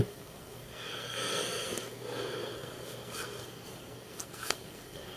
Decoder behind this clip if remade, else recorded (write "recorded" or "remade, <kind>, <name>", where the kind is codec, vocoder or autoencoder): remade, codec, SNAC